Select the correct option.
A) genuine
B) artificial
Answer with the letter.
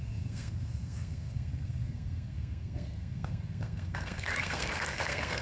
B